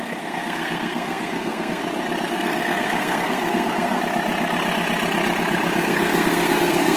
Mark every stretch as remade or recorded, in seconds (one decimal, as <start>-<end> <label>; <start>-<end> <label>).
0.0-1.8 remade; 1.8-2.3 recorded; 2.3-4.0 remade; 4.0-5.8 recorded; 5.8-7.0 remade

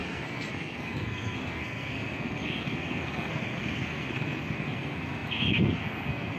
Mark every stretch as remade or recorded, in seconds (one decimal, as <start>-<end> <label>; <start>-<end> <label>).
0.0-6.4 remade

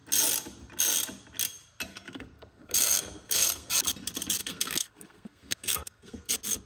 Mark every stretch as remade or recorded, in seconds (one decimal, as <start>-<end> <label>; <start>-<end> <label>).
0.0-1.9 recorded; 1.9-3.7 remade; 3.7-4.4 recorded; 4.4-6.3 remade; 6.3-6.7 recorded